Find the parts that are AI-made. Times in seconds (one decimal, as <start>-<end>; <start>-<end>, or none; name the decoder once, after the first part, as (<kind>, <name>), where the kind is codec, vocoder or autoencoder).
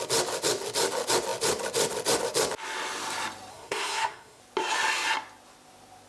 3.5-4.4 (codec, SNAC)